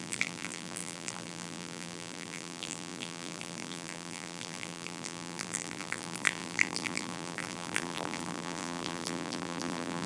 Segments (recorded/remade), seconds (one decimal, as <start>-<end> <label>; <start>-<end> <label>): 0.0-10.1 remade